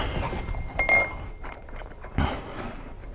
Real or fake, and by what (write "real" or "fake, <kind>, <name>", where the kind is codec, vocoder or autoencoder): real